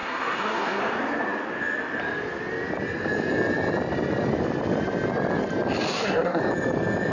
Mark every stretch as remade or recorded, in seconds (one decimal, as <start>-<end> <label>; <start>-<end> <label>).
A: 0.0-0.8 remade; 0.8-5.9 recorded; 5.9-6.4 remade; 6.4-7.1 recorded